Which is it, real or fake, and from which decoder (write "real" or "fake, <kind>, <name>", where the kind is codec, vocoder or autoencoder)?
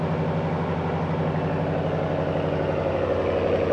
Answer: real